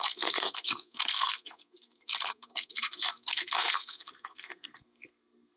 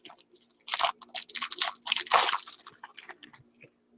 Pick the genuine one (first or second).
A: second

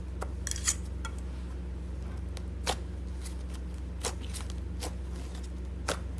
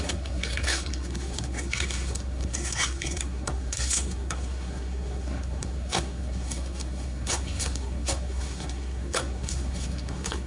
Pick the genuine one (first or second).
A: first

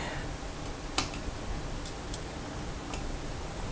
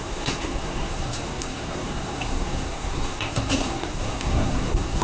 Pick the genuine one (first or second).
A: first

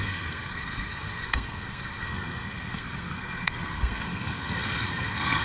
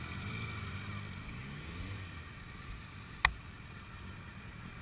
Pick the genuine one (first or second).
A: second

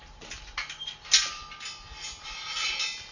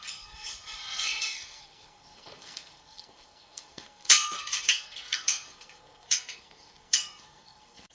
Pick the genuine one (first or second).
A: first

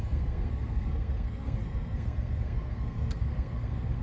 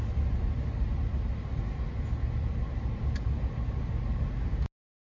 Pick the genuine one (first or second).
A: second